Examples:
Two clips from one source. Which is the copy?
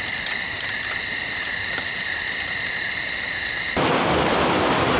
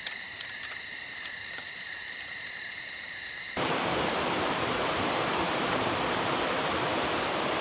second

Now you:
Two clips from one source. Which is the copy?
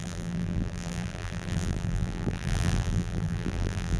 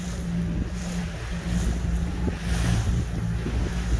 first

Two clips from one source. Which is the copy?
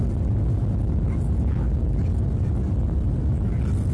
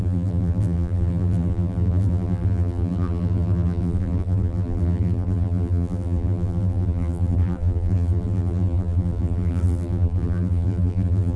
second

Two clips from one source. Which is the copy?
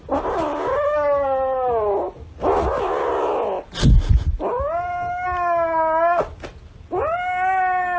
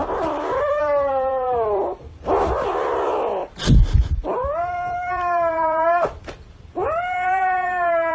second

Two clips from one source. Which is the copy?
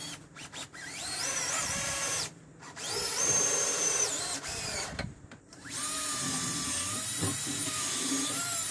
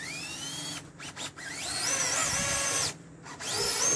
first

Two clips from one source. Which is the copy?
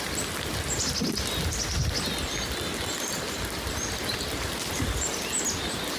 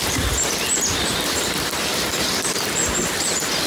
second